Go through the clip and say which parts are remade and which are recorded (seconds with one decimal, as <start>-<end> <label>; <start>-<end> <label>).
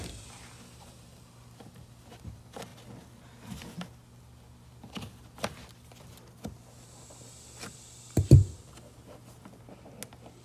0.0-10.4 recorded